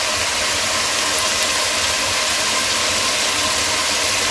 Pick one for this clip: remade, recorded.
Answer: recorded